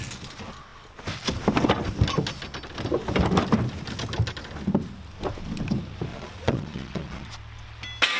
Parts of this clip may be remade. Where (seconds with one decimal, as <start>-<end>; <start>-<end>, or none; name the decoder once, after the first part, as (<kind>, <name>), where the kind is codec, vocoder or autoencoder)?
6.1-7.3 (vocoder, Vocos)